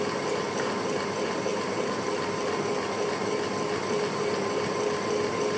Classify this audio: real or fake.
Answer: real